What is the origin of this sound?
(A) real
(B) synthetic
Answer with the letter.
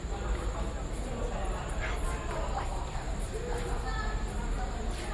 A